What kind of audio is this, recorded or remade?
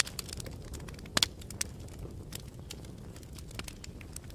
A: recorded